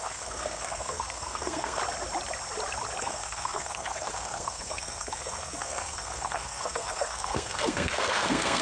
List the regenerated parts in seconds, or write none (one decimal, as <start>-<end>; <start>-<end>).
0.0-1.8; 3.0-8.6